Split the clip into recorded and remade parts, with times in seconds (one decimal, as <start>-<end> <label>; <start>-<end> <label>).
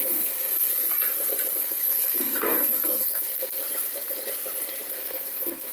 0.0-0.7 remade; 0.7-1.6 recorded; 1.6-3.6 remade; 3.6-4.9 recorded; 4.9-5.7 remade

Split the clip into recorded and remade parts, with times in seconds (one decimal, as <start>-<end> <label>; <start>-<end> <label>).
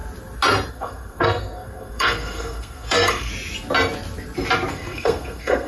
0.0-0.7 recorded; 0.7-3.3 remade; 3.3-4.7 recorded; 4.7-5.7 remade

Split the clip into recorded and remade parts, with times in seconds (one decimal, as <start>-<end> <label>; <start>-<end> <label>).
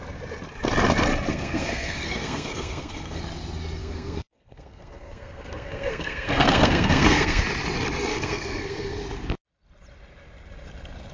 0.0-1.3 recorded; 1.3-3.2 remade; 3.2-3.8 recorded; 3.8-7.4 remade; 7.4-8.1 recorded; 8.1-9.0 remade; 9.0-11.1 recorded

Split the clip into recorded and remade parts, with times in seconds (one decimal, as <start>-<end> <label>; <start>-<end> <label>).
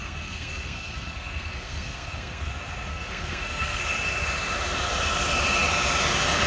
0.0-2.5 remade; 2.5-2.9 recorded; 2.9-3.8 remade; 3.8-6.5 recorded